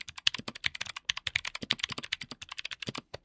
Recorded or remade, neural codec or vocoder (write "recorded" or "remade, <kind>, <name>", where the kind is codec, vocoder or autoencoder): recorded